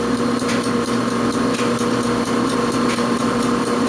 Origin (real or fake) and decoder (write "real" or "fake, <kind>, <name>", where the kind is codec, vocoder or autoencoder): real